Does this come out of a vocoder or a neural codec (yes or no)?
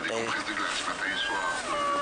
no